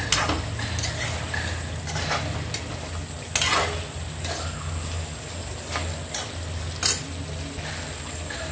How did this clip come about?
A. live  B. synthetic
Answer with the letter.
A